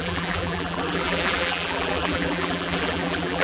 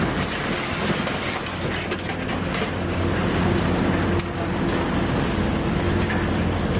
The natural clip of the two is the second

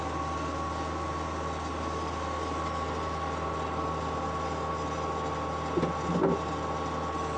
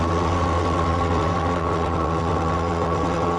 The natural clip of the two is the first